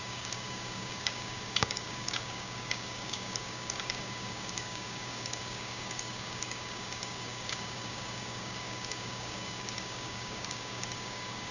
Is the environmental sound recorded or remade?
remade